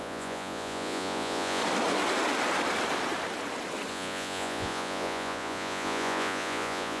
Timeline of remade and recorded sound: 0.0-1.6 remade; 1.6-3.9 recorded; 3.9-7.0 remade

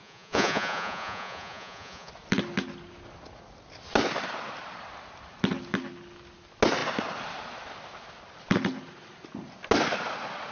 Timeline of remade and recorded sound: 0.0-2.1 remade; 2.1-10.5 recorded

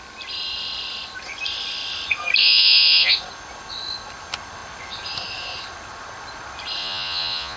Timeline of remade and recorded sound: 0.0-2.4 recorded; 2.4-3.1 remade; 3.1-6.8 recorded; 6.8-7.6 remade

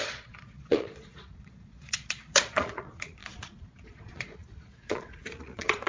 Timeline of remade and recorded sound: 0.0-5.9 remade

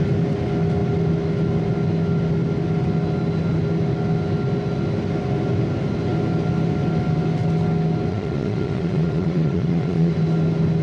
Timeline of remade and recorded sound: 0.0-8.1 recorded; 8.1-10.1 remade; 10.1-10.8 recorded

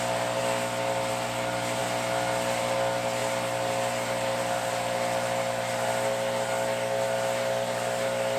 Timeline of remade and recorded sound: 0.0-8.4 recorded